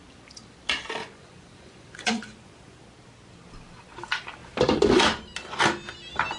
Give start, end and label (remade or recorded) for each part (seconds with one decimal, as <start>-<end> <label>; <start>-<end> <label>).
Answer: 0.0-1.0 recorded; 1.0-2.8 remade; 2.8-6.4 recorded